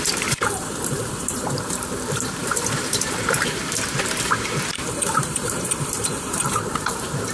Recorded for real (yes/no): no